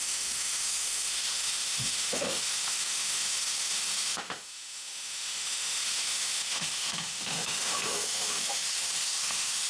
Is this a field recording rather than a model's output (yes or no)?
no